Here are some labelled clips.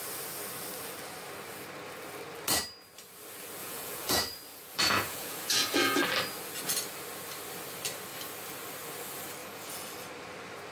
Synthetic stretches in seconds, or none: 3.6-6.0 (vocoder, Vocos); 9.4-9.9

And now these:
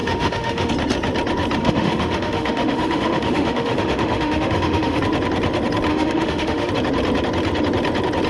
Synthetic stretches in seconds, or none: 0.0-0.7 (autoencoder, DAC-VAE); 1.6-5.0; 5.9-6.7

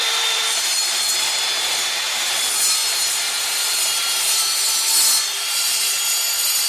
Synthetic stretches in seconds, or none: 0.0-2.4 (vocoder, BigVGAN v2); 2.8-3.8; 5.3-6.0

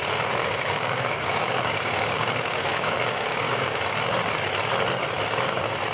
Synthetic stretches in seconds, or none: 0.4-3.8 (codec, DAC)